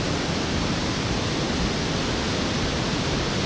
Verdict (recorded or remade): recorded